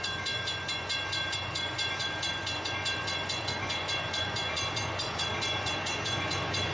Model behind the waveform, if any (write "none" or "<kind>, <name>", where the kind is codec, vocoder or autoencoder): vocoder, Vocos